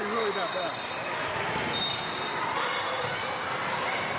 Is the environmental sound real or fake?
real